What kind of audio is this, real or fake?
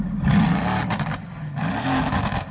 real